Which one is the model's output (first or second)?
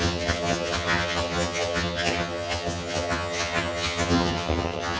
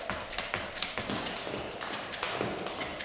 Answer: first